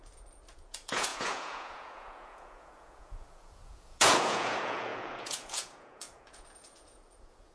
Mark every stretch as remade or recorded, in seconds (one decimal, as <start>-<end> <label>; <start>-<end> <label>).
0.0-7.5 remade